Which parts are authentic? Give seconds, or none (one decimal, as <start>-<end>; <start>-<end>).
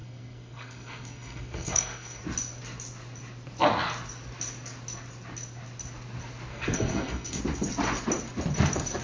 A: 2.2-6.5; 7.4-9.0